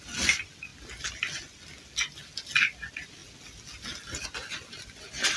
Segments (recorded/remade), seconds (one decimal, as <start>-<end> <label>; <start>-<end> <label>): 0.0-5.4 recorded